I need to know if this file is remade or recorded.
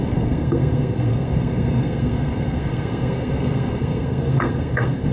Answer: remade